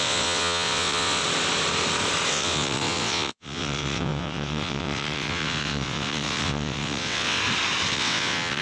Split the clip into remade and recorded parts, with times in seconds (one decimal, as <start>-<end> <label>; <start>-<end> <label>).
0.0-1.2 remade; 1.2-2.3 recorded; 2.3-7.4 remade; 7.4-7.9 recorded; 7.9-8.6 remade